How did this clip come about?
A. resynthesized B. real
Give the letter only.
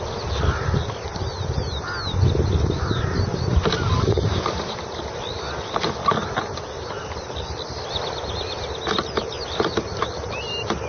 B